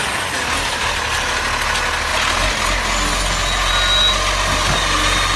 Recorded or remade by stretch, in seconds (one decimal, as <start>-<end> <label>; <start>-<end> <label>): 0.0-5.4 recorded